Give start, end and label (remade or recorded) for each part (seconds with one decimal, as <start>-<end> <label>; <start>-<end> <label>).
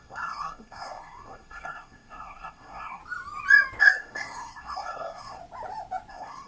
0.0-3.0 remade; 3.0-3.8 recorded; 3.8-5.4 remade; 5.4-6.1 recorded; 6.1-6.5 remade